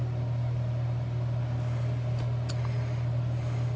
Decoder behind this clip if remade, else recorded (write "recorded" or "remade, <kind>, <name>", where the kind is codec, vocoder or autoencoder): recorded